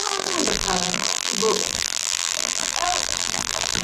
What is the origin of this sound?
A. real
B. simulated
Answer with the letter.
B